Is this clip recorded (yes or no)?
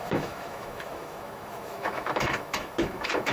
no